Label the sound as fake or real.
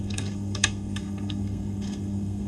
fake